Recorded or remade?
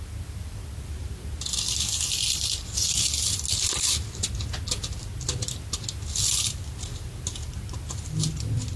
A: recorded